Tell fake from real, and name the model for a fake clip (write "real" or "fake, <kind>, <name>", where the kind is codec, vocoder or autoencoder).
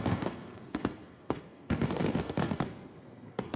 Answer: fake, codec, SNAC